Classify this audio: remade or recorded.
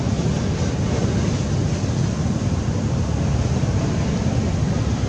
recorded